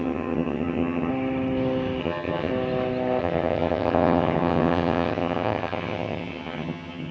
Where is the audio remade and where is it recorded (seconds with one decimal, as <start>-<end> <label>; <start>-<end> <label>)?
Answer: 0.0-1.1 remade; 1.1-2.0 recorded; 2.0-2.5 remade; 2.5-3.2 recorded; 3.2-7.1 remade